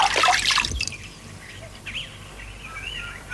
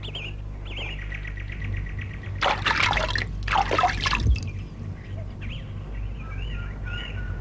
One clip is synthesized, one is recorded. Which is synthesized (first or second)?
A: first